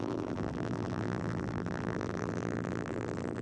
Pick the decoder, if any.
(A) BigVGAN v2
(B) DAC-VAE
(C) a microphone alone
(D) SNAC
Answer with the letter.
A